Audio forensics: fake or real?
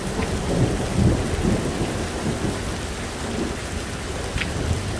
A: real